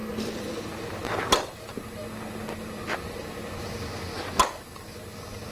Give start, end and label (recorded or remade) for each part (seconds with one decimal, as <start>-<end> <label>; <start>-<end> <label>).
0.0-1.7 remade; 1.7-5.5 recorded